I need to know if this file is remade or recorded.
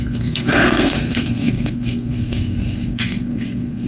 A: remade